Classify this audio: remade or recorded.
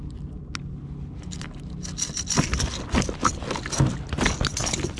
recorded